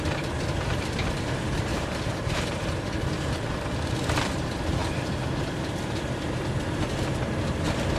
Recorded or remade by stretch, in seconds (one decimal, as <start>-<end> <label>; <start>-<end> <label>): 0.0-1.7 recorded; 1.7-2.8 remade; 2.8-8.0 recorded